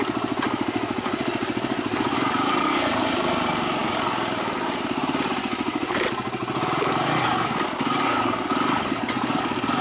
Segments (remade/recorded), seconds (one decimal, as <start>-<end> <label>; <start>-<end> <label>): 0.0-9.8 recorded